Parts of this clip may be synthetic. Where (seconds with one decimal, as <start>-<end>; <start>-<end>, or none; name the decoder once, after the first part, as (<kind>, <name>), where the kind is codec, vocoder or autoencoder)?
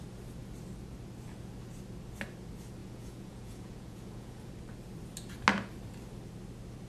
2.8-4.5 (vocoder, Vocos)